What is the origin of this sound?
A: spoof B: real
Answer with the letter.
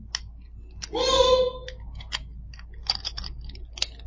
B